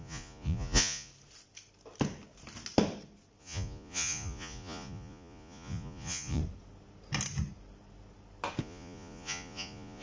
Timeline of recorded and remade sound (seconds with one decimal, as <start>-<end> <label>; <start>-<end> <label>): 0.0-1.1 remade; 1.1-3.4 recorded; 3.4-6.4 remade; 6.4-8.6 recorded; 8.6-10.0 remade